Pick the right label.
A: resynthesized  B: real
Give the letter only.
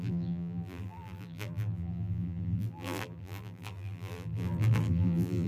A